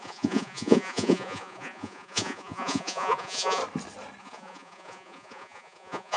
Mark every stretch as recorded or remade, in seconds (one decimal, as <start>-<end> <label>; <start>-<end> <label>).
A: 0.0-3.6 remade; 3.6-4.2 recorded; 4.2-6.2 remade

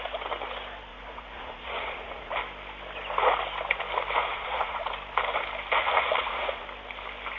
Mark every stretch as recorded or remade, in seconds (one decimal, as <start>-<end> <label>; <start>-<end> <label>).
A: 0.0-0.9 recorded; 0.9-2.3 remade; 2.3-4.2 recorded; 4.2-4.9 remade; 4.9-5.8 recorded; 5.8-6.6 remade; 6.6-7.4 recorded

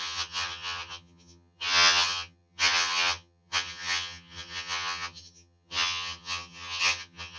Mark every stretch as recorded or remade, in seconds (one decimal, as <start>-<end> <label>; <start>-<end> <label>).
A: 0.0-7.4 remade

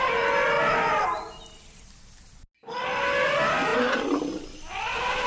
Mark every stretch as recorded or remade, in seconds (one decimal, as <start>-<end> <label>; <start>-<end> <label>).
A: 0.0-5.3 recorded